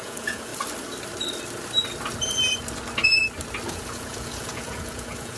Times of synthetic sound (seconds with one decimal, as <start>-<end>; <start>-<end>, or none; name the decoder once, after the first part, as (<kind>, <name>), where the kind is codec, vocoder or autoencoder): 0.0-0.5 (vocoder, Vocos); 3.7-5.4